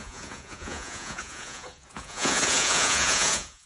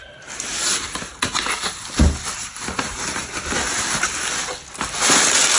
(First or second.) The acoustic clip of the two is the second